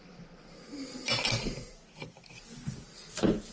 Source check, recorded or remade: recorded